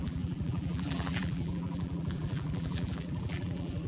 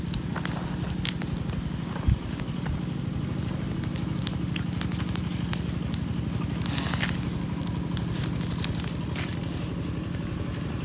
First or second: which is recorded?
second